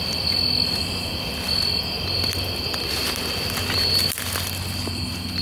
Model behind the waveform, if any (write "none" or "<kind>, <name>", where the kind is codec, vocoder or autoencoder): none